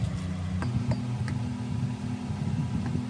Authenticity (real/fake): real